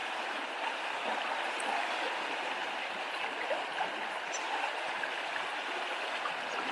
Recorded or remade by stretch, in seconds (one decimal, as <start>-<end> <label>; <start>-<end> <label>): 0.0-0.8 remade; 0.8-6.7 recorded